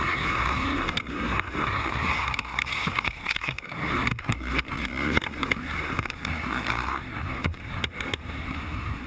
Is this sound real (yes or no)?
no